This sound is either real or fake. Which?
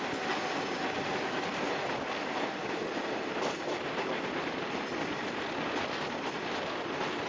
real